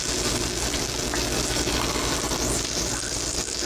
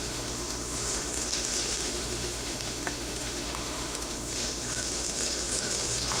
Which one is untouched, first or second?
first